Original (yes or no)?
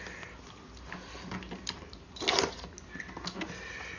yes